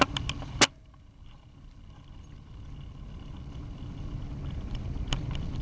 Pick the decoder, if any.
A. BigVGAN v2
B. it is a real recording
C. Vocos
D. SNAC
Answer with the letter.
B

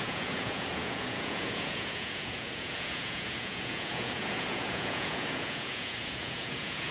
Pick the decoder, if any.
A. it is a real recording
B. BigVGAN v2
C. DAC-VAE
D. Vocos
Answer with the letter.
D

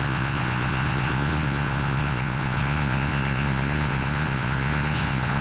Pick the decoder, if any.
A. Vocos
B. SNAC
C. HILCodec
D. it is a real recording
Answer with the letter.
A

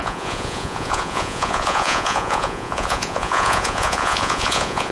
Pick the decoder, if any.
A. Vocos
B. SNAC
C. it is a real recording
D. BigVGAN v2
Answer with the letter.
A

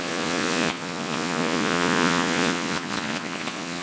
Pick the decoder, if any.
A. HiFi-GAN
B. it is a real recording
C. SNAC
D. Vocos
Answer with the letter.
D